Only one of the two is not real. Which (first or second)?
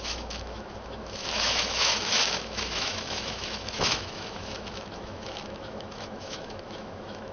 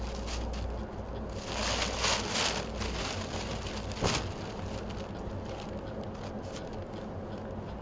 first